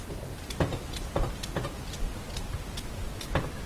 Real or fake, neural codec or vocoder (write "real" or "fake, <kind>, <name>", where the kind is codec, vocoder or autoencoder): real